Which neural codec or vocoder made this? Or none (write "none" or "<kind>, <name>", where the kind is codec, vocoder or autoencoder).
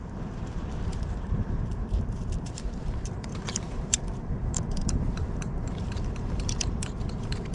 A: vocoder, BigVGAN v2